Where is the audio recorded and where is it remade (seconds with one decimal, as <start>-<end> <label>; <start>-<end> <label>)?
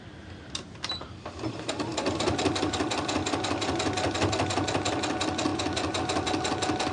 0.0-6.9 recorded